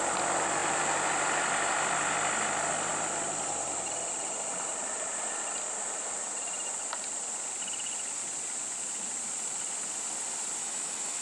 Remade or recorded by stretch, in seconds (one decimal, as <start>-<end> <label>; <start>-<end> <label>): 0.0-10.6 recorded; 10.6-11.2 remade